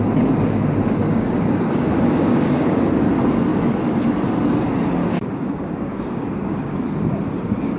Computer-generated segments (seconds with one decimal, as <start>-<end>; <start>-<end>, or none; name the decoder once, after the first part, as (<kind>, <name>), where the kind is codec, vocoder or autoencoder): 1.0-2.9 (codec, DAC); 5.0-6.8